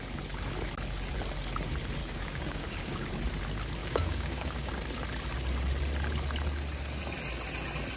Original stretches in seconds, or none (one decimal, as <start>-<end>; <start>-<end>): 0.0-2.0; 3.1-3.8; 4.7-8.0